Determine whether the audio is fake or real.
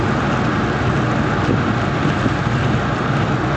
real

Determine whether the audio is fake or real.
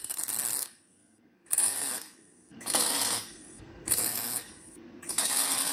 fake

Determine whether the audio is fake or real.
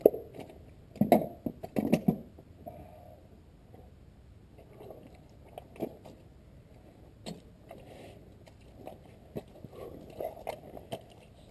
real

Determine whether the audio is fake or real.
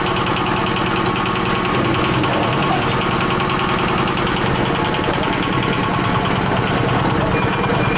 real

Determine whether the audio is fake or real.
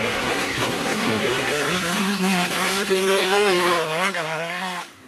fake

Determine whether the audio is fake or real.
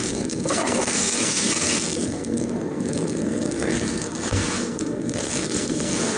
fake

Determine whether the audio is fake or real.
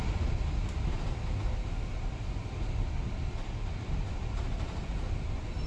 real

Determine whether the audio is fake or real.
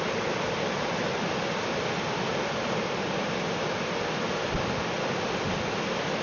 real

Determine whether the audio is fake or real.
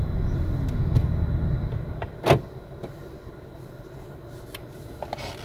real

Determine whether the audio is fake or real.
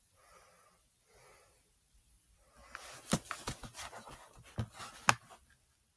real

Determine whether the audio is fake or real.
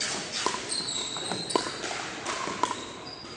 real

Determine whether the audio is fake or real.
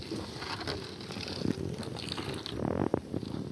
real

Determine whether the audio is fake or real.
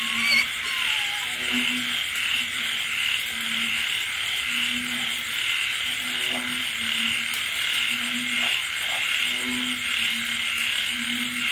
real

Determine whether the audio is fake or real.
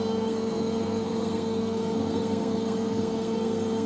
fake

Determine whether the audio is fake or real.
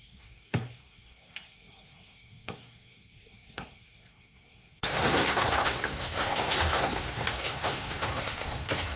fake